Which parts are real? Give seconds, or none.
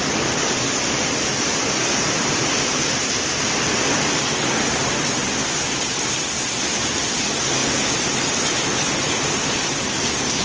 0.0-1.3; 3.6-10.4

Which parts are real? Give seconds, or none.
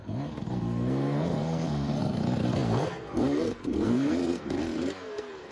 none